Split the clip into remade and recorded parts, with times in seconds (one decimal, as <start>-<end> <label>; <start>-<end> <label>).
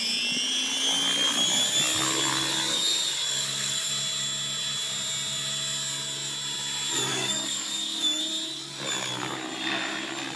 0.0-2.3 recorded; 2.3-3.9 remade; 3.9-7.1 recorded; 7.1-8.2 remade; 8.2-10.4 recorded